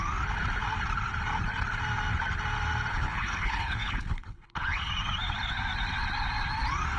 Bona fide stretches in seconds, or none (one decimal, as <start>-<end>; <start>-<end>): 0.0-2.9; 4.9-7.0